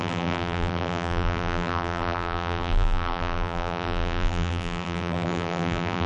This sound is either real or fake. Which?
fake